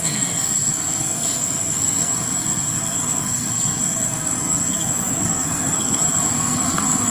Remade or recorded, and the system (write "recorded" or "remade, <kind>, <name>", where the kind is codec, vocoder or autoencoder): remade, codec, SNAC